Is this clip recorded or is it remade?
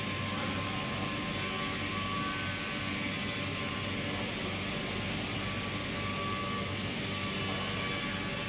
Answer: recorded